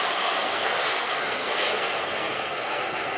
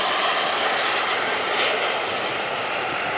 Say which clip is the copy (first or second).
first